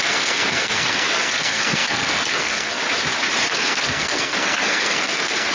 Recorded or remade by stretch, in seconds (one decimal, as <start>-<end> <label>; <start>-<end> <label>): 0.0-2.8 remade; 2.8-3.4 recorded; 3.4-5.5 remade